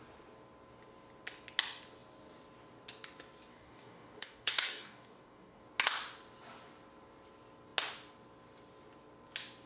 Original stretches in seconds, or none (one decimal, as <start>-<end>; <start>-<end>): 0.0-3.5; 5.6-9.7